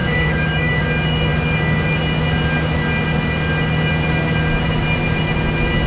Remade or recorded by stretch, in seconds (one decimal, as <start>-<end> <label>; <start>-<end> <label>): 0.0-0.8 remade; 0.8-5.9 recorded

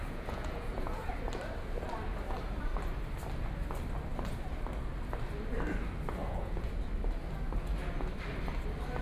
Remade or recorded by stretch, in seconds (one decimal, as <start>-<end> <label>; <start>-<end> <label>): 0.0-1.1 remade; 1.1-6.2 recorded; 6.2-6.8 remade; 6.8-9.0 recorded

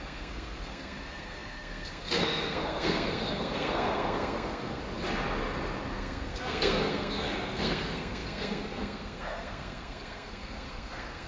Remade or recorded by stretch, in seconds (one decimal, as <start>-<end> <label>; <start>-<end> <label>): 0.0-4.8 remade; 4.8-5.9 recorded; 5.9-11.3 remade

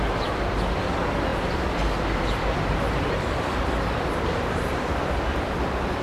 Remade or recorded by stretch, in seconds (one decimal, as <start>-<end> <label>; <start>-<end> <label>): 0.0-1.3 recorded; 1.3-4.9 remade; 4.9-6.0 recorded